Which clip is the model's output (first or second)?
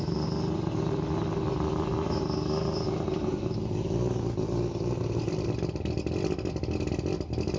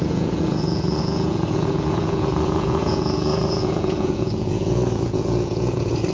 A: second